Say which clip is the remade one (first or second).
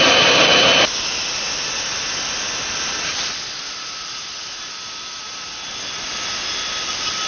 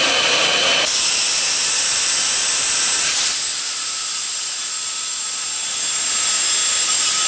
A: second